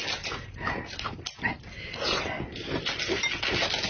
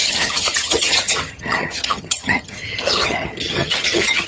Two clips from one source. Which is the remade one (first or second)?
second